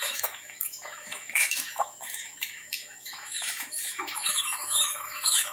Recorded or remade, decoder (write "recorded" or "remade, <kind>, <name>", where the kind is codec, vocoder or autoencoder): remade, autoencoder, DAC-VAE